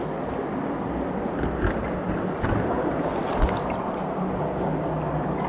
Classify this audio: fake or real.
real